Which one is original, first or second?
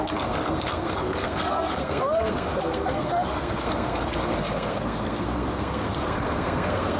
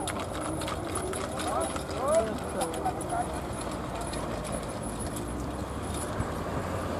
second